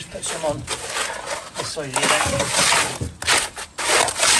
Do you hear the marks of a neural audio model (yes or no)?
no